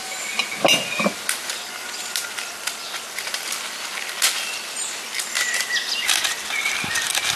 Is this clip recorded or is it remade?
recorded